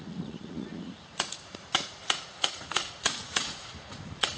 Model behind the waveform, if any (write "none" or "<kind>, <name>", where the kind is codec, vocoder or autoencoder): vocoder, Vocos